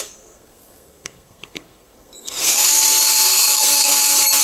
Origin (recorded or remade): remade